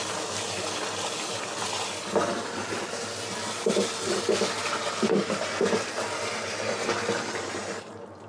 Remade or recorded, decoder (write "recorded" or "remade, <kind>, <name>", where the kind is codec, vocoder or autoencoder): recorded